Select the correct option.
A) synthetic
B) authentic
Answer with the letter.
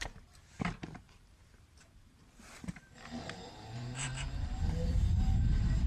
A